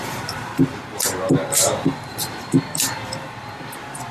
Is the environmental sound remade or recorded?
remade